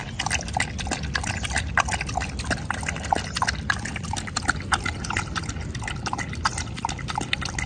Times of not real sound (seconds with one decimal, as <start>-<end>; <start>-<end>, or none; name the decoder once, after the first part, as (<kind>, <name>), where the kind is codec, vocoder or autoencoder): none